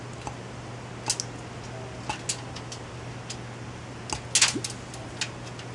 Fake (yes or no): no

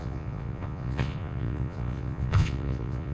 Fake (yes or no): yes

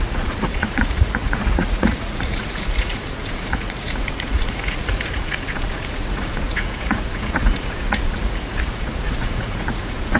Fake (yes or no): yes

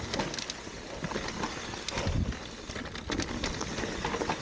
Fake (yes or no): no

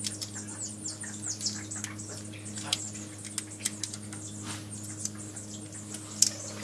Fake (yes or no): no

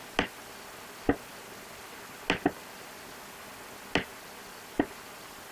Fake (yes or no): no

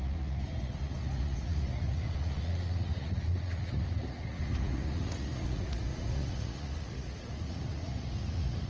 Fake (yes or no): yes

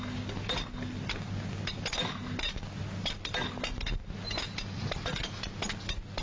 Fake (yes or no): no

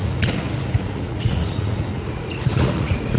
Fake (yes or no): yes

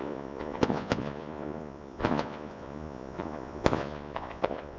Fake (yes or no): yes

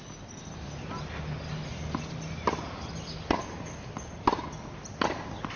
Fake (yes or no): no